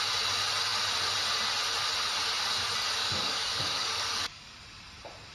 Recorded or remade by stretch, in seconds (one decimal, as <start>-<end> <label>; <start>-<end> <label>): 0.0-3.0 recorded; 3.0-4.5 remade; 4.5-5.3 recorded